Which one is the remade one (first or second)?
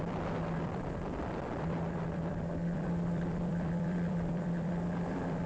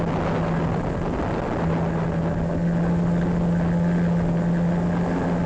first